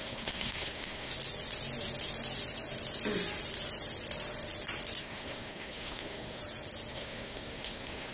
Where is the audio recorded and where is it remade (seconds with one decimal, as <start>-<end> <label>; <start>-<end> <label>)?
0.0-1.1 remade; 1.1-5.0 recorded; 5.0-6.4 remade; 6.4-6.9 recorded; 6.9-8.1 remade